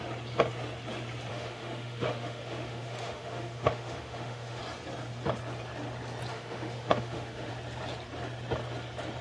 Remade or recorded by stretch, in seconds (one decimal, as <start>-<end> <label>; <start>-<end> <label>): 0.0-1.3 recorded; 1.3-4.6 remade; 4.6-6.3 recorded; 6.3-7.5 remade; 7.5-9.2 recorded